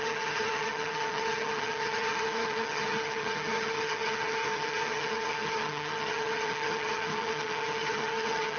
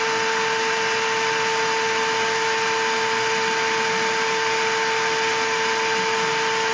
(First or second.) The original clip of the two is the second